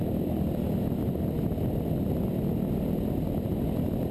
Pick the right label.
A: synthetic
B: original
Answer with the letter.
B